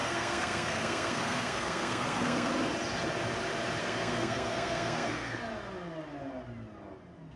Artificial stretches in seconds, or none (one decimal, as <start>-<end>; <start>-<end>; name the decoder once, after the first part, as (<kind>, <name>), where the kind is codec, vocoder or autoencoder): 0.0-2.5 (codec, SNAC); 3.8-5.4